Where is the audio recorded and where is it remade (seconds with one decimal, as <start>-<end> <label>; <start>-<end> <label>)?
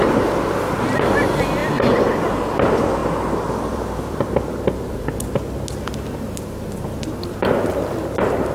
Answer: 0.0-3.0 recorded; 3.0-5.1 remade; 5.1-8.5 recorded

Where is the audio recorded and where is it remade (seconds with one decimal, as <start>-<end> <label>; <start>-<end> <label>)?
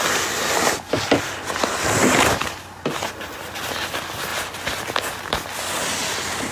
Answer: 0.0-2.0 recorded; 2.0-2.6 remade; 2.6-6.5 recorded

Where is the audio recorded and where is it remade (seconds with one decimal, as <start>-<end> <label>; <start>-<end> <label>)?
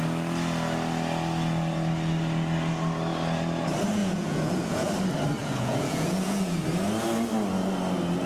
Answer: 0.0-4.0 recorded; 4.0-4.9 remade; 4.9-5.4 recorded; 5.4-6.6 remade; 6.6-8.3 recorded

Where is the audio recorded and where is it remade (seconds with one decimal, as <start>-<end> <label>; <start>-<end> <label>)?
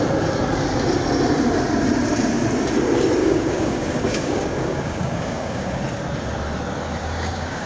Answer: 0.0-3.2 recorded; 3.2-5.8 remade; 5.8-7.0 recorded; 7.0-7.7 remade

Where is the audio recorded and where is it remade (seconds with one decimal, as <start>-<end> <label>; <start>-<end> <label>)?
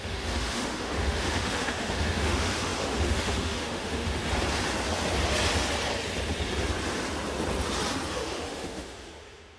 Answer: 0.0-4.2 remade; 4.2-8.1 recorded; 8.1-9.6 remade